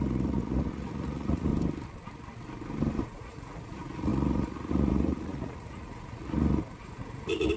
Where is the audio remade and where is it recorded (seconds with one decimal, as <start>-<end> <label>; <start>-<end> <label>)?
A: 0.0-1.5 remade; 1.5-3.0 recorded; 3.0-7.6 remade

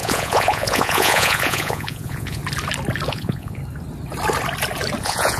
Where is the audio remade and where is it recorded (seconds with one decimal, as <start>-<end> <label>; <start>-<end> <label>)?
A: 0.0-2.4 remade; 2.4-3.1 recorded; 3.1-3.6 remade; 3.6-5.0 recorded; 5.0-5.4 remade

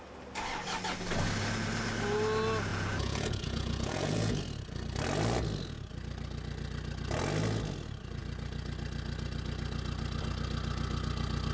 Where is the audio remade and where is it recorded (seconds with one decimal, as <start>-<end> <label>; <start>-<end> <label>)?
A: 0.0-2.7 recorded; 2.7-4.4 remade; 4.4-11.5 recorded

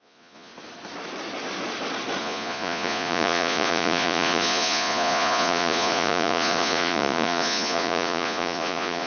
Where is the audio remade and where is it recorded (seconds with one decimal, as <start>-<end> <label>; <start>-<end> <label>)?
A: 0.0-0.5 remade; 0.5-2.2 recorded; 2.2-9.1 remade

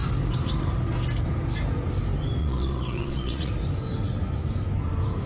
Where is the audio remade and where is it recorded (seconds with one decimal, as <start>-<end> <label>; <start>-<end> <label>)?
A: 0.0-2.4 recorded; 2.4-3.5 remade; 3.5-5.3 recorded

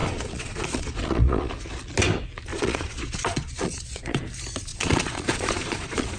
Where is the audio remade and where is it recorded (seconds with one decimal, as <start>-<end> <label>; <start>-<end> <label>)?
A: 0.0-1.5 remade; 1.5-2.5 recorded; 2.5-4.2 remade; 4.2-4.7 recorded; 4.7-6.2 remade